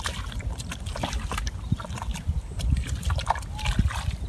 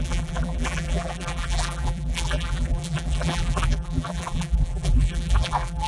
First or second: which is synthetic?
second